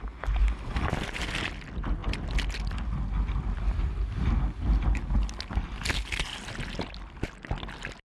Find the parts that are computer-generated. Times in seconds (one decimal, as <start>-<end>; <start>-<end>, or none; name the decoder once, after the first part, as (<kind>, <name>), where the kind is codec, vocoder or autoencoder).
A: none